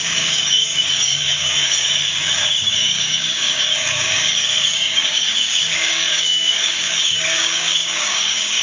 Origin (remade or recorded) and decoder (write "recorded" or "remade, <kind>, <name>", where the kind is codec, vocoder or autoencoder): remade, codec, DAC